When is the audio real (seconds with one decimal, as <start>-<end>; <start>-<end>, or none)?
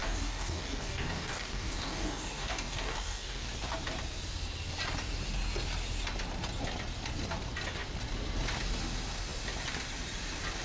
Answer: 3.5-10.6